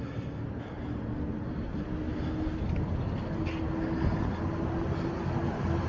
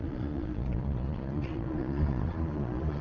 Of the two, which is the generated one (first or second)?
second